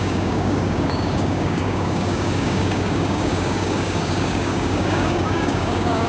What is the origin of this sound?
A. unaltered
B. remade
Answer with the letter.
B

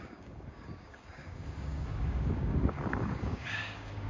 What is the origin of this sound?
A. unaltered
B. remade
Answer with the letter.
B